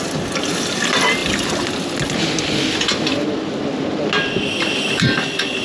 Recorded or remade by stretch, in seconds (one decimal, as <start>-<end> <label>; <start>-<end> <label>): 0.0-5.6 recorded